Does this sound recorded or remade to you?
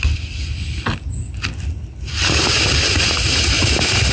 recorded